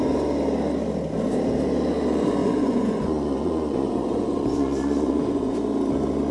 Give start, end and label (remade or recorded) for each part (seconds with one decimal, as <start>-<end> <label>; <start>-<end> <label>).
0.0-2.4 recorded; 2.4-5.5 remade; 5.5-6.3 recorded